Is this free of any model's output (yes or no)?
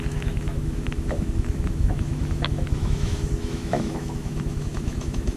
no